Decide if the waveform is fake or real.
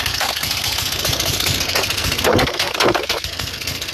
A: fake